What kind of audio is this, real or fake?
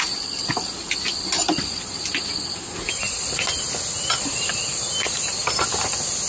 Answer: real